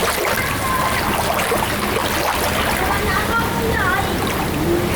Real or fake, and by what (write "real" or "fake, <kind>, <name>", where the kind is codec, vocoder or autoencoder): real